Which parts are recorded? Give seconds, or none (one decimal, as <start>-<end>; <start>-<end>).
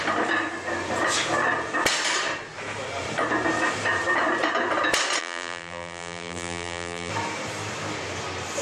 0.0-5.2; 7.1-8.6